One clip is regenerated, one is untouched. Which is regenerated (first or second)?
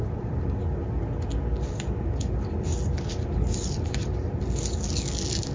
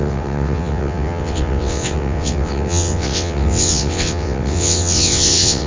second